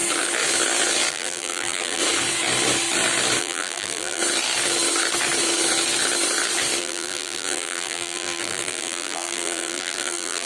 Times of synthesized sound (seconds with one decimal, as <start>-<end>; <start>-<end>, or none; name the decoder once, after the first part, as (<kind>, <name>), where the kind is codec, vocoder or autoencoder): 1.1-2.0 (vocoder, BigVGAN v2); 3.4-4.2; 6.8-10.5

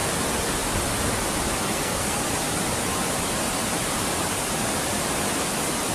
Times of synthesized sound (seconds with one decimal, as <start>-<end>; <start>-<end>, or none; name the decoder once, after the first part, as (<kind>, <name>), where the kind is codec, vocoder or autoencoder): 1.6-2.2 (codec, SNAC)

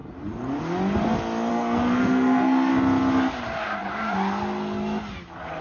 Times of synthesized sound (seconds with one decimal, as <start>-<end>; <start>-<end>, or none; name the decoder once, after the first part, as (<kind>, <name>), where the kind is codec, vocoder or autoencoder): 1.5-2.7 (codec, SNAC)

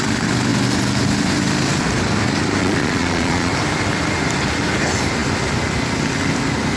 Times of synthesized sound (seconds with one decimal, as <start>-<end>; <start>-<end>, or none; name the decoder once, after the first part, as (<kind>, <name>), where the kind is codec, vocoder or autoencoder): 2.6-3.5 (vocoder, Vocos)